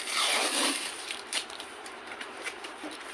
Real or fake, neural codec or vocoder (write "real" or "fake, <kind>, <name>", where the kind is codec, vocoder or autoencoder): fake, vocoder, BigVGAN v2